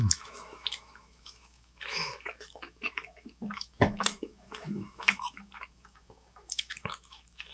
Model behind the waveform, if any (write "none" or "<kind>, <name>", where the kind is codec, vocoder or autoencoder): autoencoder, DAC-VAE